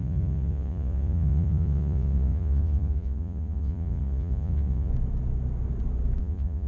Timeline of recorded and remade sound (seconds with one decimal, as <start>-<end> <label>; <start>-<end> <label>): 0.0-4.9 remade; 4.9-6.2 recorded; 6.2-6.7 remade